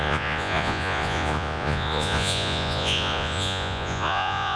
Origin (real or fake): fake